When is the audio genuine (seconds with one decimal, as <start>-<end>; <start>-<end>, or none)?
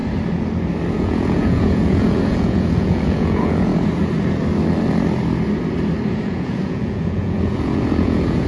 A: 0.0-0.9; 3.7-6.1